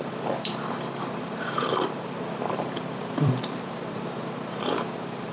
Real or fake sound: fake